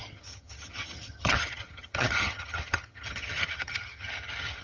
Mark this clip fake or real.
fake